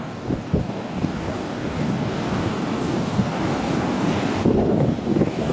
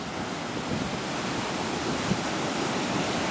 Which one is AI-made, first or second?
first